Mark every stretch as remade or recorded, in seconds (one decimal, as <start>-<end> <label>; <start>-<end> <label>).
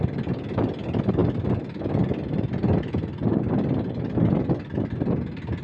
0.0-5.6 recorded